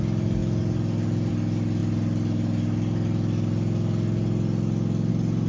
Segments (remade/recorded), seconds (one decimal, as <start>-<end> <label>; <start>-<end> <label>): 0.0-5.5 recorded